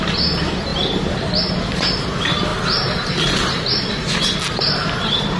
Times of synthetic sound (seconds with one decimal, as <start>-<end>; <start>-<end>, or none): 0.7-1.4